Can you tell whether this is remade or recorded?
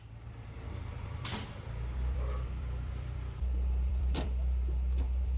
remade